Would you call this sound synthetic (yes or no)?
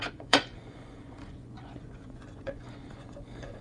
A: yes